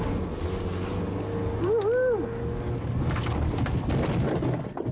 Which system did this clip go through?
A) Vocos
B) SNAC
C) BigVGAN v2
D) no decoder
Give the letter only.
D